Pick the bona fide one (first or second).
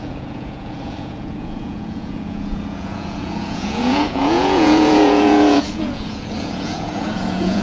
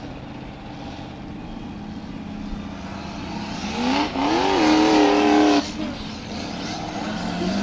second